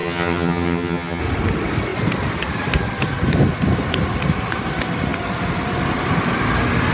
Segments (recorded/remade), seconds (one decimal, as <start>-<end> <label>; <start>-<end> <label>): 0.0-1.2 remade; 1.2-6.9 recorded